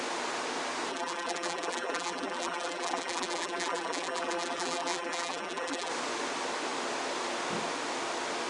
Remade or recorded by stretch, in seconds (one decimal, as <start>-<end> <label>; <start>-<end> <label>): 0.0-0.9 recorded; 0.9-5.9 remade; 5.9-8.5 recorded